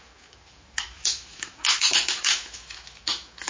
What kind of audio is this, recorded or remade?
remade